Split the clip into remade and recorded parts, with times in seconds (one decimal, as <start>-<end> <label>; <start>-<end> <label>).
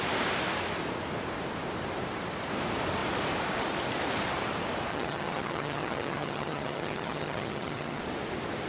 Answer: 0.0-4.9 recorded; 4.9-8.0 remade; 8.0-8.7 recorded